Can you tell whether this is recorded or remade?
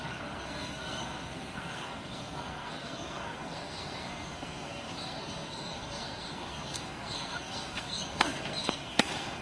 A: remade